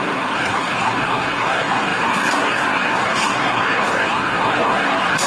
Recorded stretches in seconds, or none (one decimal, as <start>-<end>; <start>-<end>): none